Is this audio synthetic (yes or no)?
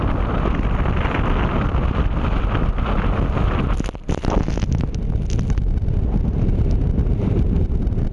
no